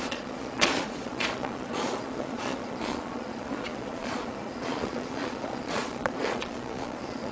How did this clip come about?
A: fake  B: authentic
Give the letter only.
A